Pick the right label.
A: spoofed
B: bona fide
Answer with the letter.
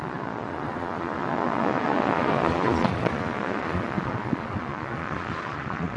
A